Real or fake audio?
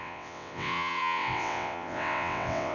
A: fake